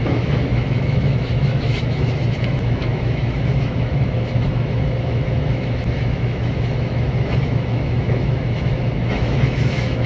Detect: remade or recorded remade